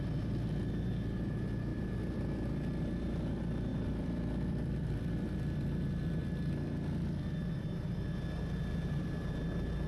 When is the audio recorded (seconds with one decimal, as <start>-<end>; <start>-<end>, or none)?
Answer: 0.0-1.7; 2.5-3.7; 6.2-8.7; 9.3-9.9